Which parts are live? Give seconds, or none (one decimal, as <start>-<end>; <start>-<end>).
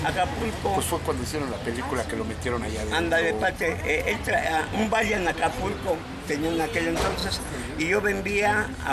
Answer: 0.0-8.9